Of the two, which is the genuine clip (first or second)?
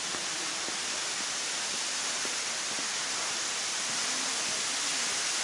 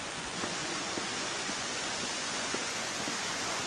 first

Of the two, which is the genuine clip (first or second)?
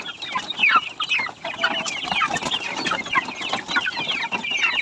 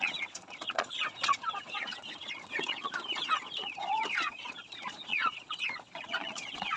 first